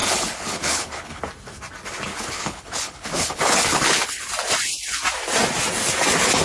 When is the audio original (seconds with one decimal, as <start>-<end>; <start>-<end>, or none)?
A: 1.2-2.1; 4.2-6.4